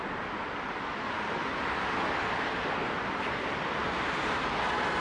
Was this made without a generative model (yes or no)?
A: yes